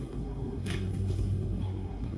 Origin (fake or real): fake